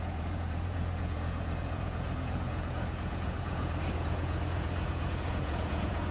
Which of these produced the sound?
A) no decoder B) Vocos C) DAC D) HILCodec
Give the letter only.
B